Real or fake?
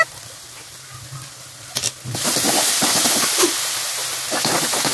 real